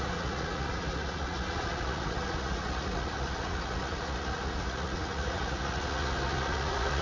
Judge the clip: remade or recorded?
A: remade